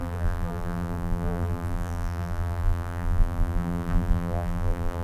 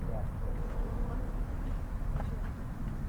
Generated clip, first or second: first